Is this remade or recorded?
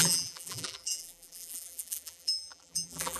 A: remade